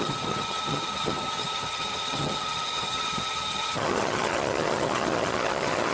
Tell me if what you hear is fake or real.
fake